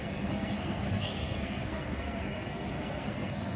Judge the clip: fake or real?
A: fake